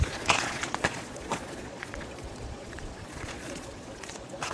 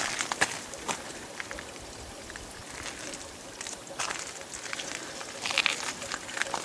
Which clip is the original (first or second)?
second